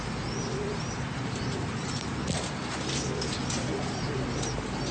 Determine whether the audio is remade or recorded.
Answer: recorded